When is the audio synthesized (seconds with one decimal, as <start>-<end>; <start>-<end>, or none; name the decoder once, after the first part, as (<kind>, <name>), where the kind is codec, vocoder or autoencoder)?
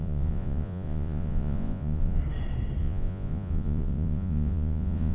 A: 0.0-2.2 (vocoder, Vocos); 2.8-5.1